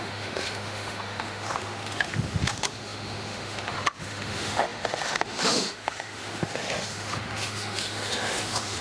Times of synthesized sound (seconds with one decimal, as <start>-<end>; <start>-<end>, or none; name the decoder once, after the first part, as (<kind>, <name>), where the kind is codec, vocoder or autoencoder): 0.0-8.8 (autoencoder, DAC-VAE)